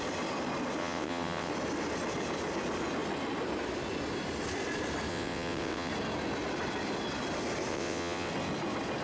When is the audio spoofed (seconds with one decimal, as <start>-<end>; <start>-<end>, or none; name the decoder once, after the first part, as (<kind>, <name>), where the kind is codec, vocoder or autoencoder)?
0.8-1.5 (vocoder, WaveNeXt); 5.1-5.9; 7.7-8.3